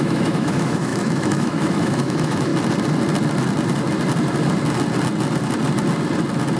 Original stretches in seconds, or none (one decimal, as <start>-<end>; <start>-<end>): 2.5-6.6